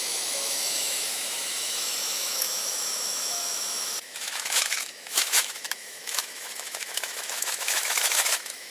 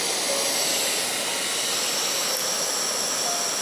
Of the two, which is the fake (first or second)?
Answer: first